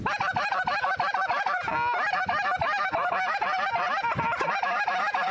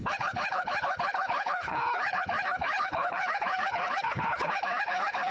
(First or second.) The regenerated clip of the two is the second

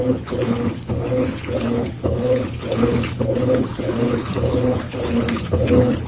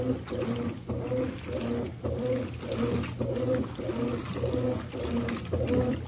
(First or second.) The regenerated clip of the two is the first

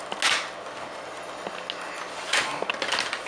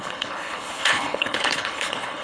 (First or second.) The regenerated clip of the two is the second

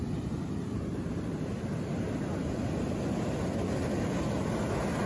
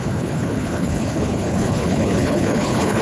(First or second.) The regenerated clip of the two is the second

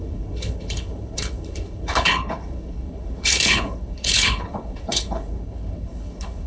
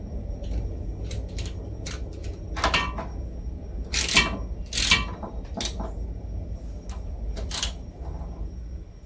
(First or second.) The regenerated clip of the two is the first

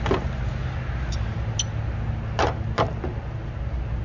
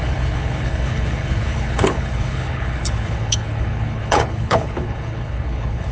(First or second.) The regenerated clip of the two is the second